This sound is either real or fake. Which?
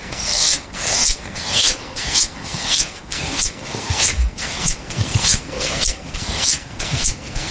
fake